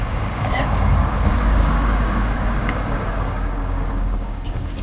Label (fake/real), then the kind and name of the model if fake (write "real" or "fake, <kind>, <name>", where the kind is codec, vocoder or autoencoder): fake, codec, DAC